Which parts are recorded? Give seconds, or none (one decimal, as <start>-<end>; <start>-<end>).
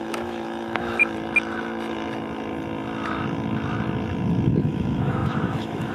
1.0-4.5